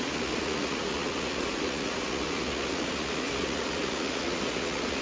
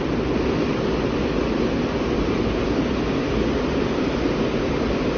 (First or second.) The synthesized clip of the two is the first